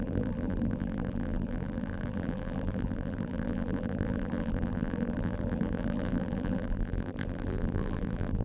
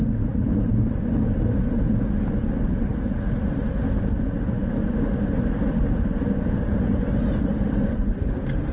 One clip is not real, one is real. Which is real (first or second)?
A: second